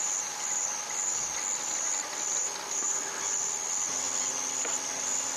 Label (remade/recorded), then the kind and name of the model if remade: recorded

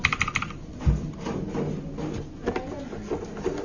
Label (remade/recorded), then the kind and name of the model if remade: recorded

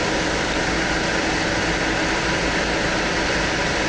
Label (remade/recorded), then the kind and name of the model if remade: recorded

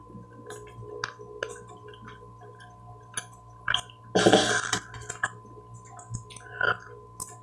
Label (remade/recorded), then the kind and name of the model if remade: recorded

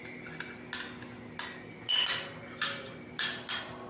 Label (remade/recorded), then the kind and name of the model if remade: recorded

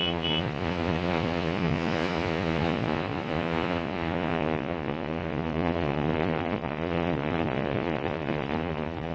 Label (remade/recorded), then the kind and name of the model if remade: remade, vocoder, Vocos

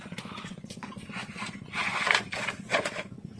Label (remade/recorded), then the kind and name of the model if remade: remade, vocoder, Vocos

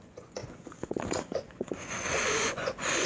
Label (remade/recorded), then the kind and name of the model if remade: remade, vocoder, Vocos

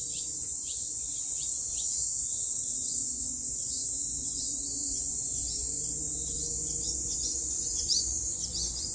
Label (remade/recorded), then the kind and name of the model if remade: remade, vocoder, Vocos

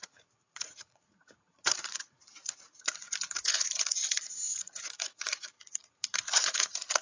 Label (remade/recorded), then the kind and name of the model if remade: remade, vocoder, Vocos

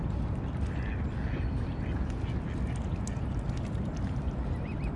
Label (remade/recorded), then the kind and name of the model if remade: recorded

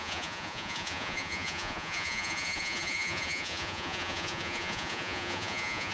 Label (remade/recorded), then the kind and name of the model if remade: remade, vocoder, Vocos